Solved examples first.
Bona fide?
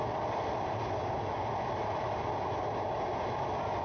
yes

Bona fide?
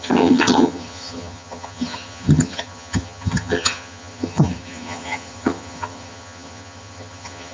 no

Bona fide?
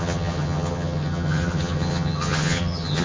no